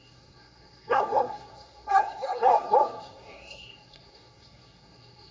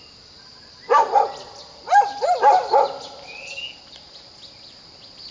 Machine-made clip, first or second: first